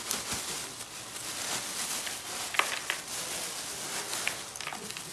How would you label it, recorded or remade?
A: recorded